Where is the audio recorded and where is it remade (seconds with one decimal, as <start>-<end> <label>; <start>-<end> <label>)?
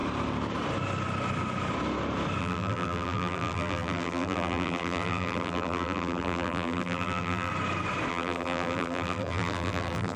0.0-2.4 recorded; 2.4-7.5 remade; 7.5-8.1 recorded; 8.1-10.2 remade